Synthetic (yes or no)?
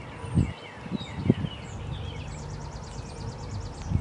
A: no